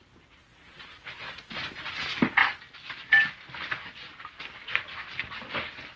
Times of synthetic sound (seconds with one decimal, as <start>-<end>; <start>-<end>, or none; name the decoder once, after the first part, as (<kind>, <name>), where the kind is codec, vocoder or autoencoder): none